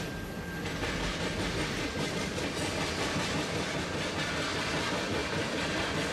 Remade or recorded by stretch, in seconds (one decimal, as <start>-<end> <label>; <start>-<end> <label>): 0.0-6.1 recorded